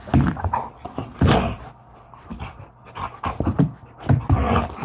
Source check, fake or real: real